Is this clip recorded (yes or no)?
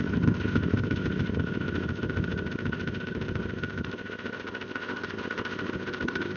no